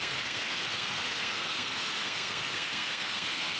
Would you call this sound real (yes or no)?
no